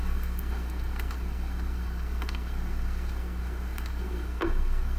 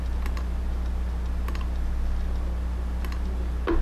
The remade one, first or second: first